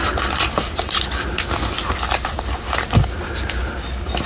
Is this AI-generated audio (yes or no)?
no